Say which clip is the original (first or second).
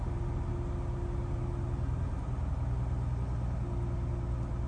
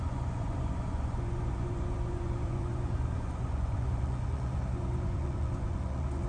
first